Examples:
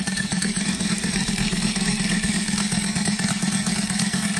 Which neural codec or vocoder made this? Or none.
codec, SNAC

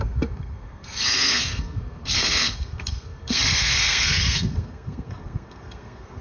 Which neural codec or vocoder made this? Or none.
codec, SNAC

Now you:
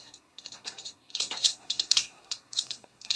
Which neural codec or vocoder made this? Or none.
codec, SNAC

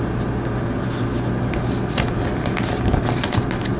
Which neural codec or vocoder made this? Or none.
none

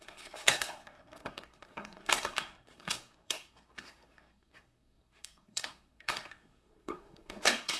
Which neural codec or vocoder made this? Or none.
codec, SNAC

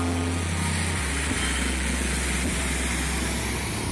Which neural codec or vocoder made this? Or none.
none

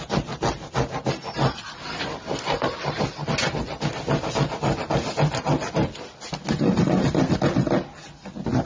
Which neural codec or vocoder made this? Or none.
none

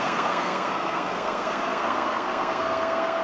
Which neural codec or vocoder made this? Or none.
codec, SNAC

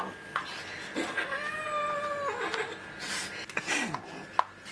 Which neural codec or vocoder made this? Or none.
none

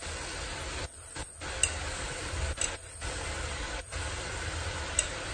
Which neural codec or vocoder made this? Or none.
none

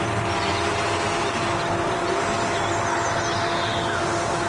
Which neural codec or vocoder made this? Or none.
none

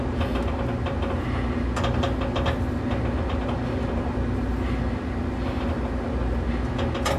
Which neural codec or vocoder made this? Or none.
none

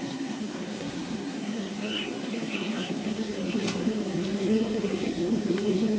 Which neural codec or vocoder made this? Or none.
codec, SNAC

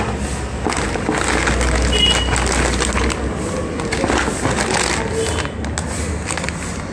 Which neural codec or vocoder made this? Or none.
none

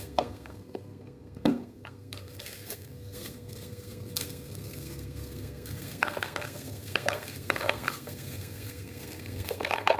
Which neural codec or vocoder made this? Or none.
codec, SNAC